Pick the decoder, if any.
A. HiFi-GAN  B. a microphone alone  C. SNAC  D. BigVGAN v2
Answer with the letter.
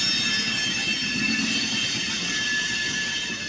B